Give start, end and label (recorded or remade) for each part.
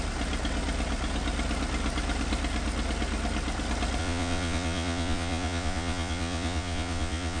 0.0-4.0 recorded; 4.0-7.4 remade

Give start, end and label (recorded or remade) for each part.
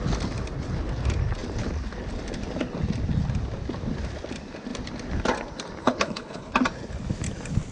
0.0-5.8 recorded; 5.8-6.5 remade; 6.5-7.7 recorded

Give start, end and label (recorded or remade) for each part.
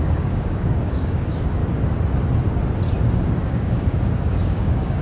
0.0-1.6 remade; 1.6-3.1 recorded; 3.1-5.0 remade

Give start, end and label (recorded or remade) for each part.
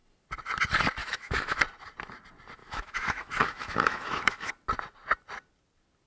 0.0-1.0 recorded; 1.0-1.6 remade; 1.6-2.6 recorded; 2.6-4.5 remade; 4.5-6.1 recorded